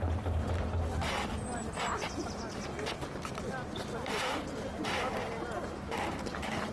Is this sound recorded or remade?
recorded